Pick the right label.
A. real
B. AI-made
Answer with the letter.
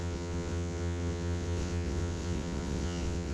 B